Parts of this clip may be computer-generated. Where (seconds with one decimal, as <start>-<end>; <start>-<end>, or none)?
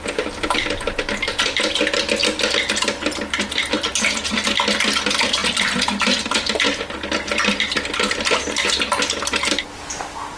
none